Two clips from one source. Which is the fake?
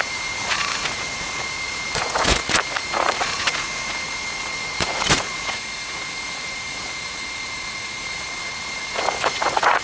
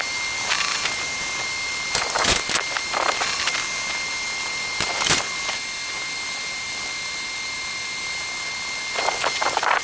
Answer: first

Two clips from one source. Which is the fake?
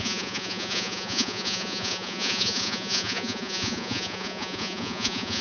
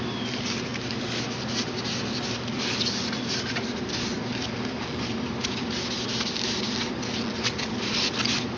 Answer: first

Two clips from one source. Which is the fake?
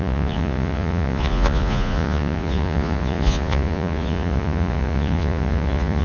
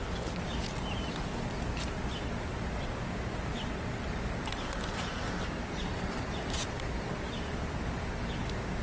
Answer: first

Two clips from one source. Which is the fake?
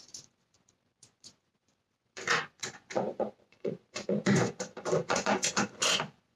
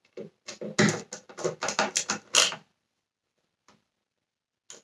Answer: first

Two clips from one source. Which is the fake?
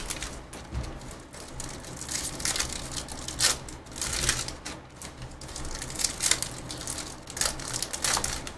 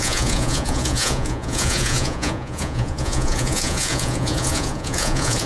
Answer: second